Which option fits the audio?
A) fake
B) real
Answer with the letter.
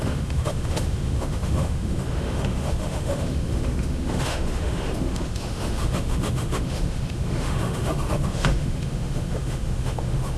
A